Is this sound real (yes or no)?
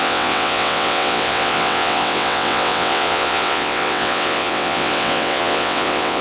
no